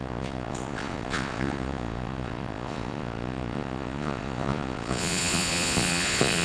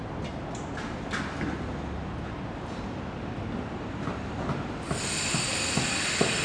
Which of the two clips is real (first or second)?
second